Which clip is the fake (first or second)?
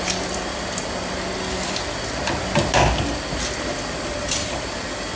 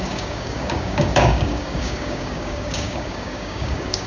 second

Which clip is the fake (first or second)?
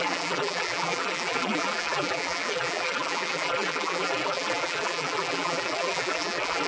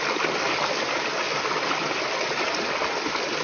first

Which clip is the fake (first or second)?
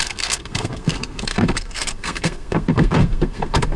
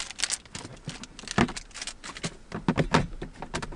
first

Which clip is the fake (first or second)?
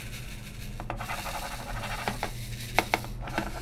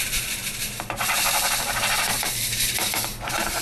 second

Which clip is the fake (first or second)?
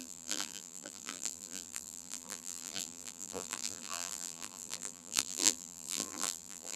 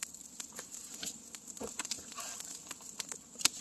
first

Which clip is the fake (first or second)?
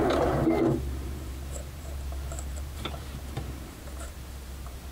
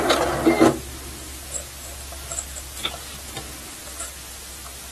first